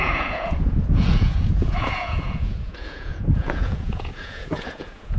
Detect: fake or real fake